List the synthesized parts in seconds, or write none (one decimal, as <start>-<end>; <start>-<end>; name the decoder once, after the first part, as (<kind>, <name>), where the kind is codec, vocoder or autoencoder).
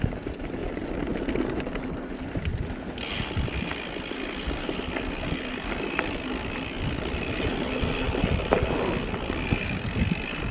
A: none